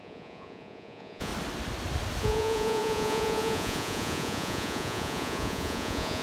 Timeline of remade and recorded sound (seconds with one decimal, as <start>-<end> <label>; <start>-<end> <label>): 0.0-1.3 remade; 1.3-2.2 recorded; 2.2-6.2 remade